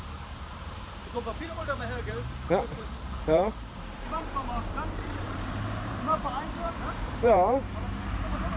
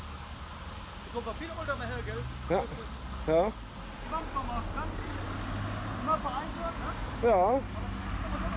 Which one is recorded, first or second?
second